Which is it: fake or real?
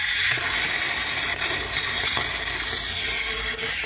real